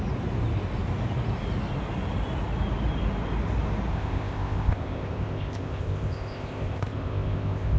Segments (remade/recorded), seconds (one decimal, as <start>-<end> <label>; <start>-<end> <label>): 0.0-3.9 recorded; 3.9-7.8 remade